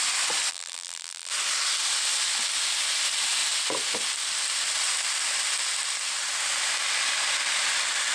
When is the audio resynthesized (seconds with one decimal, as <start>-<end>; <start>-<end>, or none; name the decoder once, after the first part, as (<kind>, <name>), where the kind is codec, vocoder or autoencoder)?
0.5-1.3 (vocoder, BigVGAN v2)